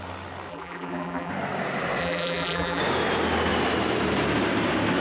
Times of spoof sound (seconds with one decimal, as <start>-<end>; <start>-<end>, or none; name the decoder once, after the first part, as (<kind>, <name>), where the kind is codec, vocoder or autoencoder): 0.5-1.3 (vocoder, BigVGAN v2); 2.0-2.8